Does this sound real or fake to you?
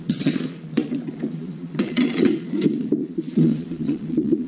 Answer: fake